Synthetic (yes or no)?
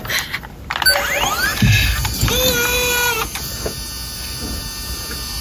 no